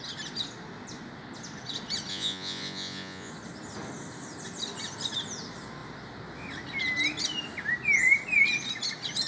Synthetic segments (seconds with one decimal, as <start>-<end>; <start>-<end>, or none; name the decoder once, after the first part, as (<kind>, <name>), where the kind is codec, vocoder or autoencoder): 2.1-3.3 (vocoder, Vocos)